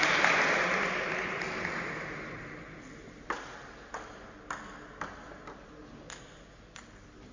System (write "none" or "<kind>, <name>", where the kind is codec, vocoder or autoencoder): none